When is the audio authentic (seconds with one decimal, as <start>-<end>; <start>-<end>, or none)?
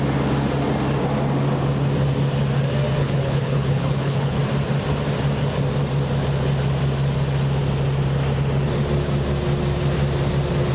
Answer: 0.0-3.0; 4.4-10.7